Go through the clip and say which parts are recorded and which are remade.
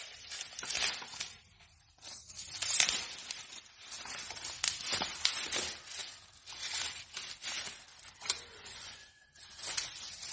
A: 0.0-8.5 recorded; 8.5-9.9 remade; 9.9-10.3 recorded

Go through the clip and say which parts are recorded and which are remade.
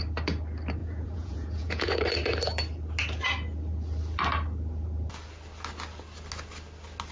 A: 0.0-0.8 recorded; 0.8-2.0 remade; 2.0-7.1 recorded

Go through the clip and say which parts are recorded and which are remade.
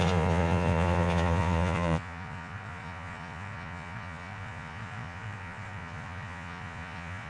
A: 0.0-7.3 remade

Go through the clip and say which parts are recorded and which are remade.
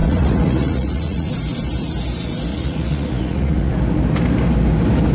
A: 0.0-1.3 remade; 1.3-2.5 recorded; 2.5-3.7 remade; 3.7-5.1 recorded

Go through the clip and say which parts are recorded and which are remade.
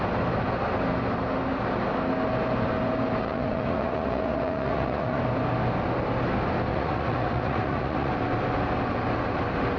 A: 0.0-3.2 recorded; 3.2-5.2 remade; 5.2-6.7 recorded; 6.7-8.1 remade; 8.1-9.8 recorded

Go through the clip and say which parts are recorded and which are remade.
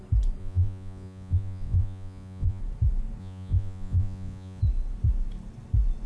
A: 0.0-0.4 recorded; 0.4-2.6 remade; 2.6-3.2 recorded; 3.2-4.6 remade; 4.6-6.1 recorded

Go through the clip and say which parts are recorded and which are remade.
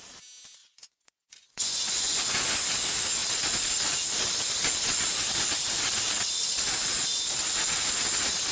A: 0.0-0.6 recorded; 0.6-2.2 remade; 2.2-8.5 recorded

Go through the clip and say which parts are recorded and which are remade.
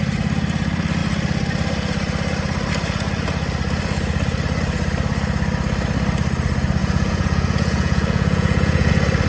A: 0.0-6.8 recorded; 6.8-8.9 remade; 8.9-9.3 recorded